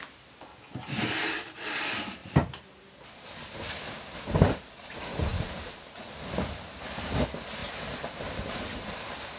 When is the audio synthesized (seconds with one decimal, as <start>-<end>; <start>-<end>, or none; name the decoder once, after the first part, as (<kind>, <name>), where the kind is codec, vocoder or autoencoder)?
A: 2.2-4.0 (vocoder, BigVGAN v2); 5.1-5.6; 7.6-8.2